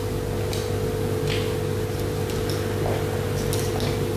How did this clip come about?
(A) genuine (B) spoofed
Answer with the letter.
A